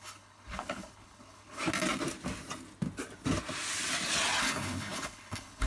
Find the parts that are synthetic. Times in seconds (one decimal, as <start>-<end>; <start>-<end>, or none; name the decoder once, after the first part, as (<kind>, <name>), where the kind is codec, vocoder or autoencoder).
0.0-1.6 (codec, HILCodec); 4.4-5.7